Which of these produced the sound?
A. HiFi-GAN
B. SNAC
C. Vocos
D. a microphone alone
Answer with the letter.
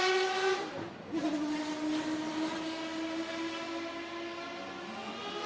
D